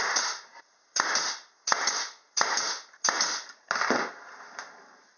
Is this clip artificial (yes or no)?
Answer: no